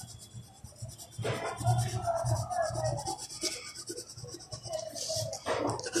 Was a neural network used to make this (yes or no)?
no